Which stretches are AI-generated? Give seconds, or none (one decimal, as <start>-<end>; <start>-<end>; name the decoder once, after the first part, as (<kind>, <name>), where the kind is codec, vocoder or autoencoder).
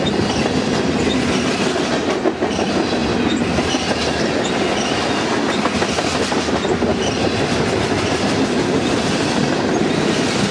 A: 6.9-8.2 (vocoder, BigVGAN v2)